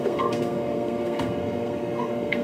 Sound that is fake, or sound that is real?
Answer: fake